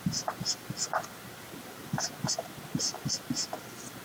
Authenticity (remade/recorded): recorded